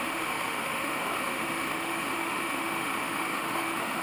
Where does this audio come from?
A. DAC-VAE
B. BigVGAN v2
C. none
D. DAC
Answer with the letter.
A